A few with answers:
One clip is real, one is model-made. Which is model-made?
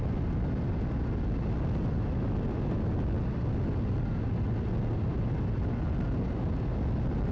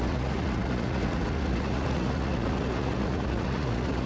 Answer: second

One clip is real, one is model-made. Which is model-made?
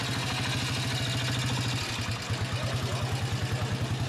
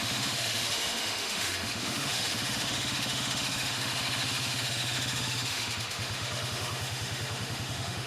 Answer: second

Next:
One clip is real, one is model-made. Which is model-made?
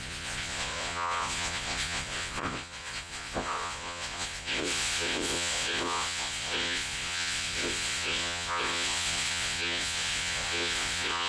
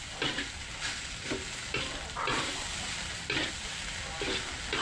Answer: first